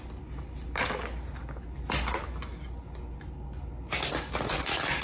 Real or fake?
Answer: real